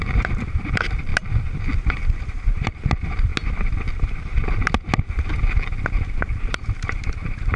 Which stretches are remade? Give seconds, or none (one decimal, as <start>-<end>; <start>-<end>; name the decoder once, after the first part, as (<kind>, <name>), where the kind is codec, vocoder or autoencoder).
0.0-1.1 (vocoder, BigVGAN v2); 1.9-3.3; 6.1-7.6